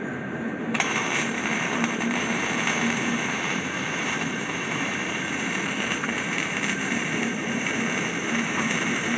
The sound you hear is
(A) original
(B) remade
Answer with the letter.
B